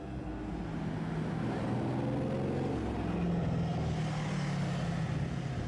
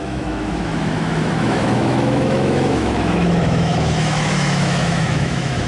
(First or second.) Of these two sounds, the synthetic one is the second